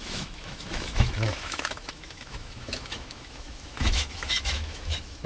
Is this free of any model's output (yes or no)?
no